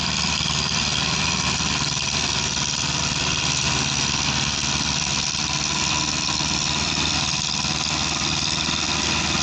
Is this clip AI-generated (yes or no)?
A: no